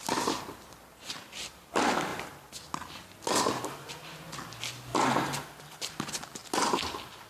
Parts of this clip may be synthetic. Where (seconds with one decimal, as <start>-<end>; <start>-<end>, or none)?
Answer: 4.9-5.9